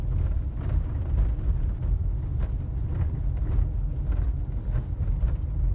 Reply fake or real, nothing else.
real